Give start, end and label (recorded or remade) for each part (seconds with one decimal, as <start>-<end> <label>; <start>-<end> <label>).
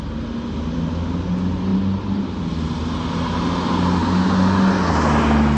0.0-5.6 recorded